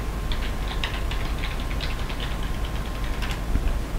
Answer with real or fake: real